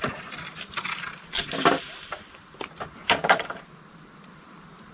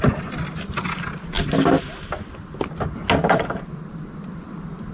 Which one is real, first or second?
second